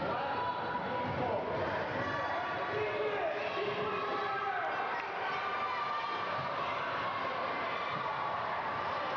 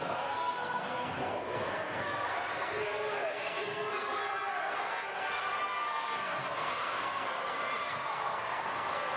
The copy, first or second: second